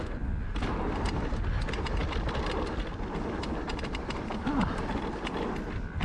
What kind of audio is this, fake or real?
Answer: real